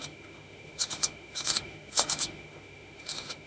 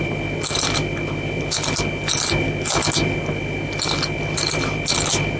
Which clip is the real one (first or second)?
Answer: second